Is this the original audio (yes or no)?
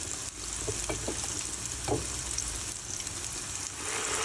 yes